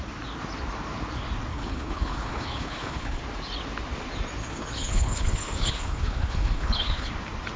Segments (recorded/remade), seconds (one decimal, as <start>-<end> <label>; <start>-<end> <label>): 0.0-1.5 recorded; 1.5-3.2 remade; 3.2-4.4 recorded; 4.4-7.1 remade; 7.1-7.6 recorded